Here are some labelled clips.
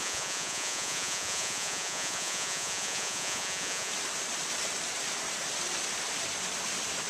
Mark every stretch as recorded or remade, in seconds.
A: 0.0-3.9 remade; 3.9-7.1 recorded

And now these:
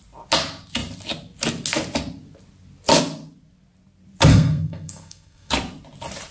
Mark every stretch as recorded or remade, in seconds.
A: 0.0-4.3 recorded; 4.3-5.5 remade; 5.5-6.3 recorded

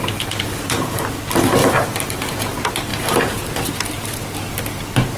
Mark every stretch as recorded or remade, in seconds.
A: 0.0-0.5 recorded; 0.5-1.0 remade; 1.0-1.6 recorded; 1.6-2.4 remade; 2.4-2.9 recorded; 2.9-3.7 remade; 3.7-5.2 recorded

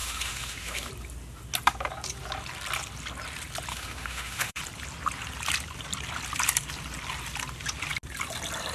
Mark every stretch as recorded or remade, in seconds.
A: 0.0-0.9 remade; 0.9-3.7 recorded; 3.7-4.6 remade; 4.6-8.7 recorded